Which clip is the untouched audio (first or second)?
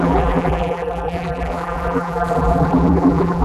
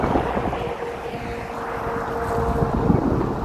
second